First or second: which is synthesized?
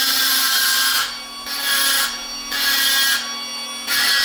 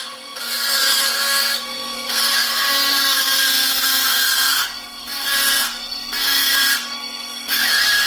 second